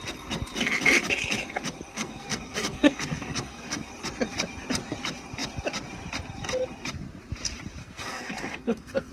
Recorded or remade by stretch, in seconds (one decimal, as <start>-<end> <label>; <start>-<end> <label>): 0.0-1.9 recorded; 1.9-3.9 remade; 3.9-7.8 recorded; 7.8-9.1 remade